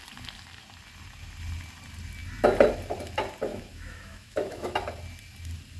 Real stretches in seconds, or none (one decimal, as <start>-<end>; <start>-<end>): 0.0-3.5; 4.7-5.8